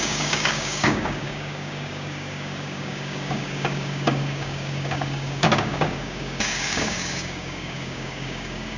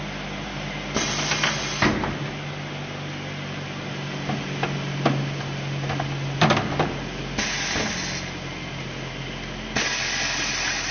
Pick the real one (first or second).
second